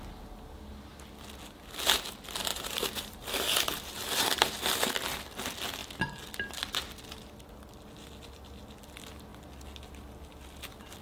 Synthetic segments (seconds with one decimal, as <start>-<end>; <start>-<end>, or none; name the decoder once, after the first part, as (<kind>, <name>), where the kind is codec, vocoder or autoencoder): 2.5-4.5 (vocoder, BigVGAN v2)